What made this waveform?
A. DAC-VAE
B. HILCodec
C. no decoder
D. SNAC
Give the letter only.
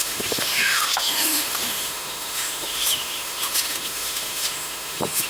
A